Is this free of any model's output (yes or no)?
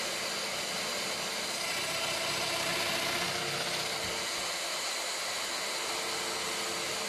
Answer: yes